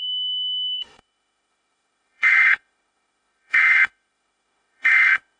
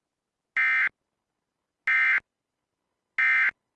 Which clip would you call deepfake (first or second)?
first